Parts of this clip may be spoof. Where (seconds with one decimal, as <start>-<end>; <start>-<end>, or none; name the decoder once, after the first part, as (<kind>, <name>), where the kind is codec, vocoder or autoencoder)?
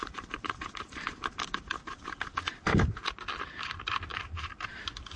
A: 0.0-3.1 (vocoder, BigVGAN v2); 4.1-4.8